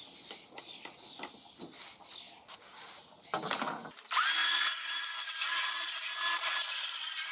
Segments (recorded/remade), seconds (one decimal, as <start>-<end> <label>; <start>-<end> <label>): 0.0-4.4 recorded; 4.4-6.0 remade; 6.0-7.3 recorded